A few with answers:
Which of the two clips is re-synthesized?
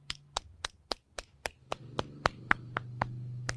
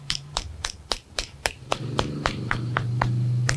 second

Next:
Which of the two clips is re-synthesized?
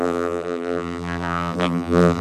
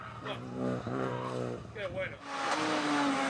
first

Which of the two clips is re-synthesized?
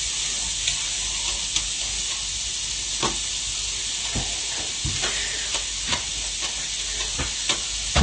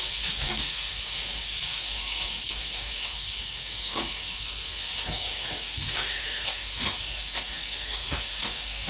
second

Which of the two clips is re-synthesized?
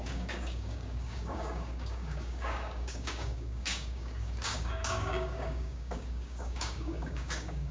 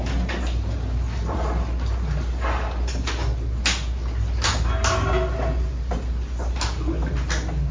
first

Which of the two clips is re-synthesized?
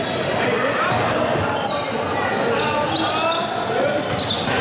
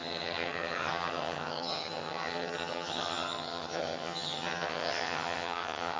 second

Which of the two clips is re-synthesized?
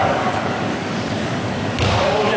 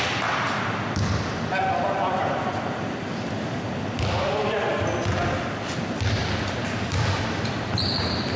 first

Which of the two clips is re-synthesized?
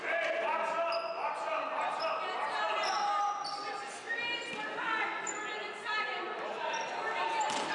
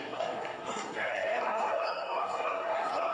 second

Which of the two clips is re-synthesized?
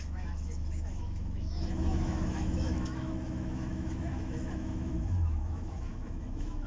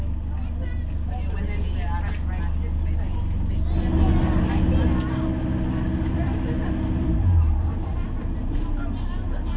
first